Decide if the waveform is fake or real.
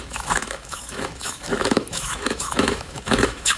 fake